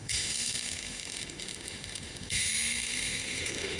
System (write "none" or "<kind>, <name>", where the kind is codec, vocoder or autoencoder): autoencoder, DAC-VAE